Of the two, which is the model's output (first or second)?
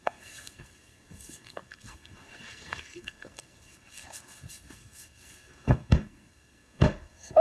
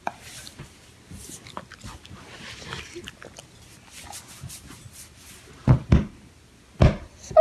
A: first